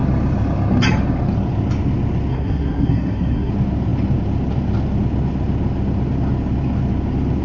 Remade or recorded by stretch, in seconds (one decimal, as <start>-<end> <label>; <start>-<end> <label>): 0.0-2.3 recorded; 2.3-3.5 remade; 3.5-7.4 recorded